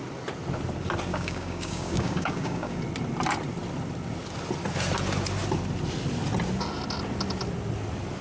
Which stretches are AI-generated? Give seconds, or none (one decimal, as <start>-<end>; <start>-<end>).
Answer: 1.1-2.8